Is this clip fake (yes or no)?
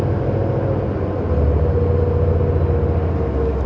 no